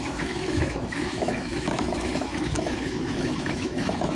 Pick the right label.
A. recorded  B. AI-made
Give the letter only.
B